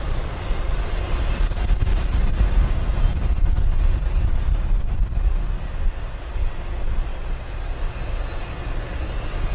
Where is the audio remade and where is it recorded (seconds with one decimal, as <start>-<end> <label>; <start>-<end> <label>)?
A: 0.0-1.9 recorded; 1.9-4.8 remade; 4.8-7.1 recorded; 7.1-7.7 remade; 7.7-9.5 recorded